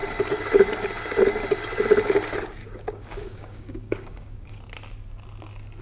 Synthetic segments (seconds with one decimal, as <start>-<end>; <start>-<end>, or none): 2.6-4.6